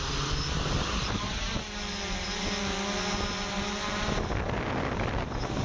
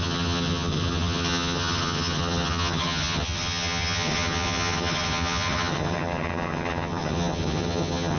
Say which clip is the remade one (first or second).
second